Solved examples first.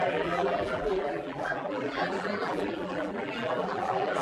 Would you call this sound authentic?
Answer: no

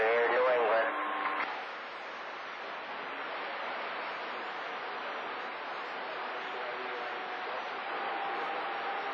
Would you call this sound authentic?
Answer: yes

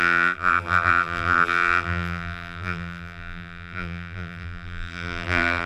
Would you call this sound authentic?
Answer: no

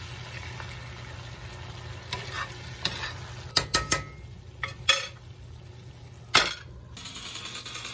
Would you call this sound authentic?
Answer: yes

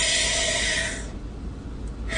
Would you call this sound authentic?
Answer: yes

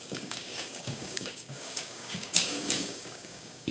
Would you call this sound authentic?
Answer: no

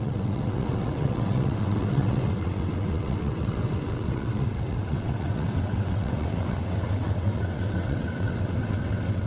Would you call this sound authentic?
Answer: no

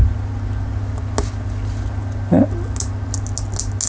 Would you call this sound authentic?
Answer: yes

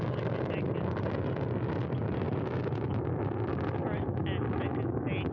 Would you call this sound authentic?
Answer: yes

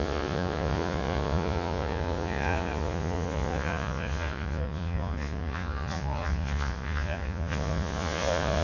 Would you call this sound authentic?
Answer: no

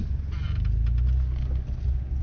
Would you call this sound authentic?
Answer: yes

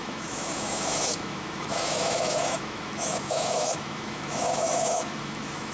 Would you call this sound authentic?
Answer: no